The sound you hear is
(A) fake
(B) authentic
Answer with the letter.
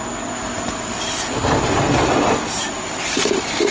B